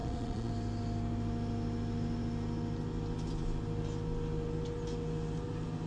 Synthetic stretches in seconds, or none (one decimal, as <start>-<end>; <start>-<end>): 0.0-0.5

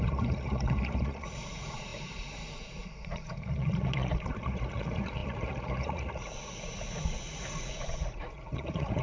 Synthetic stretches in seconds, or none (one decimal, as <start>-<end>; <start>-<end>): 0.0-9.0

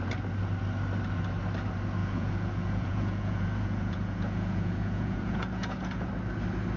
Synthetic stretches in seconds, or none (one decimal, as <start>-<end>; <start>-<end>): 2.0-6.1

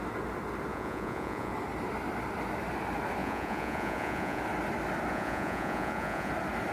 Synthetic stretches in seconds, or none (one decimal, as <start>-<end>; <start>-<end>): 0.7-1.5; 3.2-4.4; 5.1-6.3